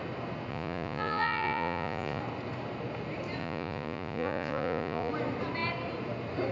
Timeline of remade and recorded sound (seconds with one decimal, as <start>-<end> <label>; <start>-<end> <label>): 0.0-0.5 recorded; 0.5-2.2 remade; 2.2-3.4 recorded; 3.4-5.1 remade; 5.1-6.5 recorded